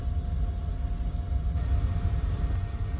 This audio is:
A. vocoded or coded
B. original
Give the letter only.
B